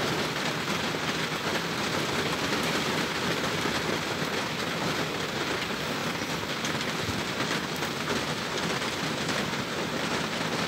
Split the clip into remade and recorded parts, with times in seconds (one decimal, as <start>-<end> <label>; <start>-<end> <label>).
0.0-1.5 recorded; 1.5-4.6 remade; 4.6-10.7 recorded